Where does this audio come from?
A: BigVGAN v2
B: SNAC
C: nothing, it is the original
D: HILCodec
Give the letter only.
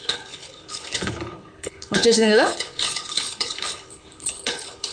D